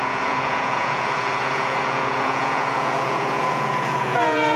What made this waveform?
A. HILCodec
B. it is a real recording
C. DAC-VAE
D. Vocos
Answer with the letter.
D